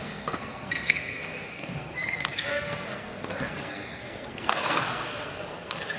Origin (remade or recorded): remade